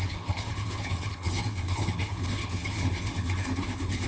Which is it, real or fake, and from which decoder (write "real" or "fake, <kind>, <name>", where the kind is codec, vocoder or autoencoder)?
fake, codec, HILCodec